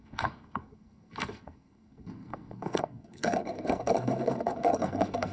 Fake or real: fake